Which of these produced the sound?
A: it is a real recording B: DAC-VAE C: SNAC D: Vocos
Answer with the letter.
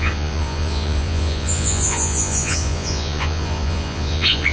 D